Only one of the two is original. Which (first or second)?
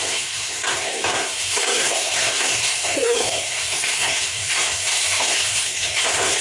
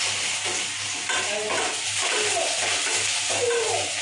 second